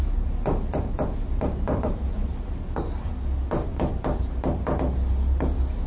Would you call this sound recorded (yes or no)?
yes